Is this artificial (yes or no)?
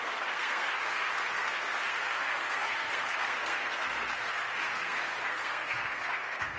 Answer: yes